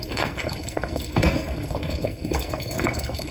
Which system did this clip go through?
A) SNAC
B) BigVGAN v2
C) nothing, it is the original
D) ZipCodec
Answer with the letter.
A